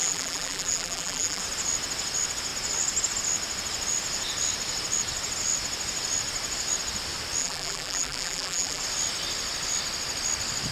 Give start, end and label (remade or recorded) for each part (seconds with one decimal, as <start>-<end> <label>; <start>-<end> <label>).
0.0-1.4 remade; 1.4-7.4 recorded; 7.4-8.8 remade; 8.8-10.7 recorded